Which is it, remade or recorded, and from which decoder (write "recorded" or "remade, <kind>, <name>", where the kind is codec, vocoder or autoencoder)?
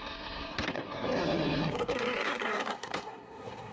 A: remade, codec, SNAC